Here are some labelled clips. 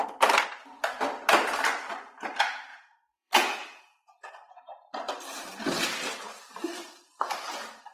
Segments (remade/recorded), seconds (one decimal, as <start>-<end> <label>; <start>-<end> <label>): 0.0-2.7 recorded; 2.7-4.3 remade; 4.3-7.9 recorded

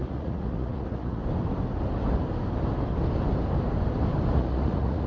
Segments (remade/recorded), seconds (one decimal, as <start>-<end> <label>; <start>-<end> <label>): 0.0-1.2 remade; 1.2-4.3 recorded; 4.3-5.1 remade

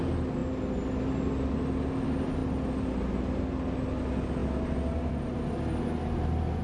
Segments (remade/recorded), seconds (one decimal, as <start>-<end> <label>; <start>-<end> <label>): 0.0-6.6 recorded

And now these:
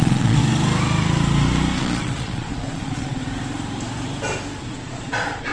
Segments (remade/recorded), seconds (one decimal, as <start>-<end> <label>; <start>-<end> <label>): 0.0-0.4 remade; 0.4-1.8 recorded; 1.8-3.2 remade; 3.2-4.6 recorded; 4.6-5.5 remade